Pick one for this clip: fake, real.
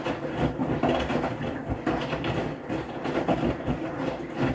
real